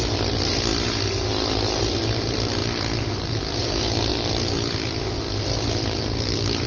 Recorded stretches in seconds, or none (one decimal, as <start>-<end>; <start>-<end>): 0.0-2.6; 3.6-4.1; 5.0-6.7